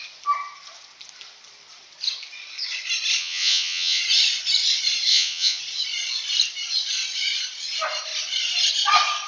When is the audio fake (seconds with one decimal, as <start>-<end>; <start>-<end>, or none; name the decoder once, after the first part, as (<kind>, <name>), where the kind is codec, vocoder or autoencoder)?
3.2-4.0 (vocoder, Vocos); 5.1-5.6